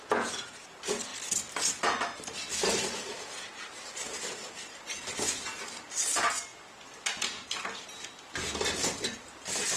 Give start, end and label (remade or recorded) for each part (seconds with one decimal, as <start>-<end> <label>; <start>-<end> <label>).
0.0-9.8 recorded